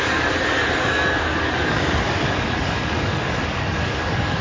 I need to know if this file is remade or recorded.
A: remade